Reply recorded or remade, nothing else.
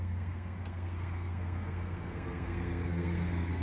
remade